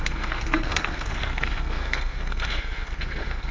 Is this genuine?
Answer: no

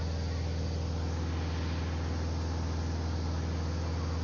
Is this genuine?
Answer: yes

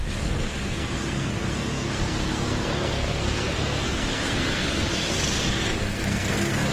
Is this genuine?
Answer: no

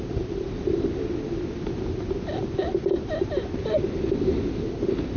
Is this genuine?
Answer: yes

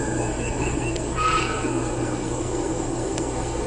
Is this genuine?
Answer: no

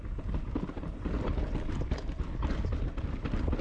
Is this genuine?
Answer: yes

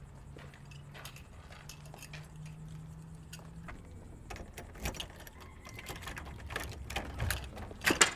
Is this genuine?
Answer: yes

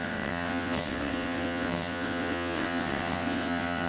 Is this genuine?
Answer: no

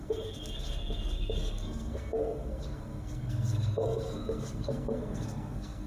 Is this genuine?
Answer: no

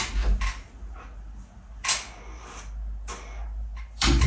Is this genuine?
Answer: yes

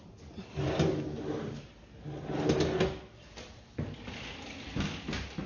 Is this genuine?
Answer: yes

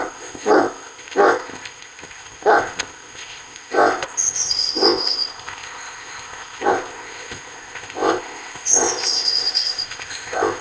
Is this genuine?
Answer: no